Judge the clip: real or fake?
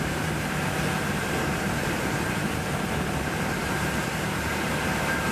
fake